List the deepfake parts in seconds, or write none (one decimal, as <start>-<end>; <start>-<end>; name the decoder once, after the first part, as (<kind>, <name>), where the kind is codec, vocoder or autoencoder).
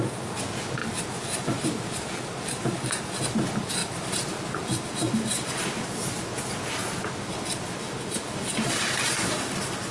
0.8-3.1 (vocoder, BigVGAN v2); 3.8-4.9